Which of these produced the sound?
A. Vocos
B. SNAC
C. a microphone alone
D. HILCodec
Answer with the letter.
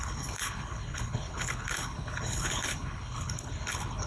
D